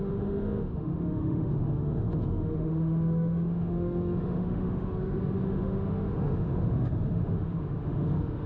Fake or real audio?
fake